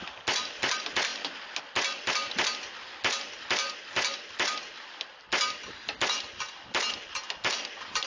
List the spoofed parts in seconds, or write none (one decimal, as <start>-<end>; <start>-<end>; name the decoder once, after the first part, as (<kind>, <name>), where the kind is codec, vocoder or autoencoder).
none

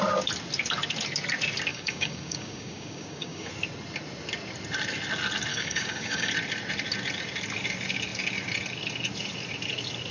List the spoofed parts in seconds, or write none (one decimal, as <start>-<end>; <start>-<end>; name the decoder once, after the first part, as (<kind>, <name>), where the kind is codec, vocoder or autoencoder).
1.7-3.5 (codec, DAC); 5.5-6.3

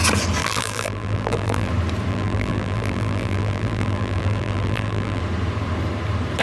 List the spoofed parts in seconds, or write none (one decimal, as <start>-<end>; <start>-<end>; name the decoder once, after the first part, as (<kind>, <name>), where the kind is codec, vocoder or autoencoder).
0.4-1.7 (vocoder, BigVGAN v2); 2.1-5.2

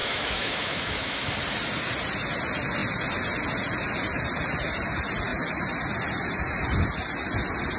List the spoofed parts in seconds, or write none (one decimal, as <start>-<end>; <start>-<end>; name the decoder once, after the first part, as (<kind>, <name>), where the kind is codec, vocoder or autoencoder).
0.0-1.3 (autoencoder, DAC-VAE)

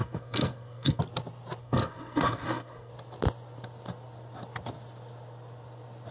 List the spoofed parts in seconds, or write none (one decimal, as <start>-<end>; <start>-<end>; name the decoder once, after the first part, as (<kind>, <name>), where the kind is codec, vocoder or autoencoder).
0.0-1.0 (codec, SNAC); 1.6-2.9

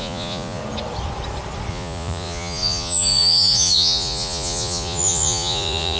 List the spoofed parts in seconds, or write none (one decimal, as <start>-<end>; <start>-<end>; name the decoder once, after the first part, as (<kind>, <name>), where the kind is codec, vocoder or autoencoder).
0.0-0.6 (vocoder, Vocos); 1.7-6.0

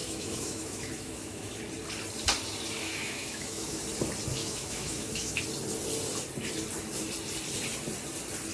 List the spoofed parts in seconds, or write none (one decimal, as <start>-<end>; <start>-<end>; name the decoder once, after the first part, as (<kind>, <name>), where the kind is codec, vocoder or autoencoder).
0.0-1.6 (autoencoder, DAC-VAE); 2.8-3.8; 4.4-5.4

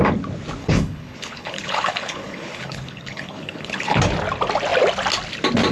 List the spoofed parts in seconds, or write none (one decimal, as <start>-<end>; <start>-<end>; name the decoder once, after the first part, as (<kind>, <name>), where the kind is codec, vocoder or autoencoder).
0.6-4.0 (codec, HILCodec)